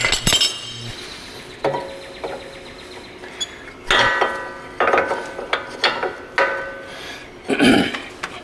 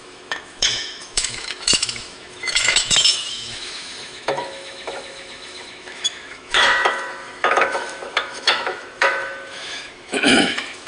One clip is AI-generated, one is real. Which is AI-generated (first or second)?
second